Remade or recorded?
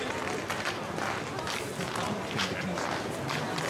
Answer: recorded